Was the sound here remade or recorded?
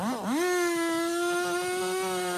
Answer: recorded